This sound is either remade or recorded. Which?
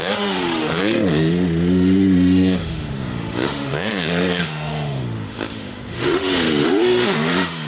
remade